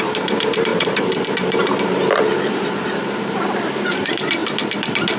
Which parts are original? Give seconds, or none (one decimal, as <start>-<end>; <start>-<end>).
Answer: 4.4-5.2